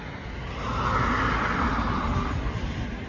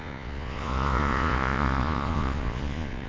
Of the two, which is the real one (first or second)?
first